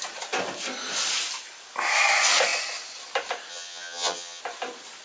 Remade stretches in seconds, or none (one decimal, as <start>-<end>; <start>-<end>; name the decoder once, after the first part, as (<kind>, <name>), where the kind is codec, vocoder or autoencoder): 3.5-4.4 (vocoder, HiFi-GAN)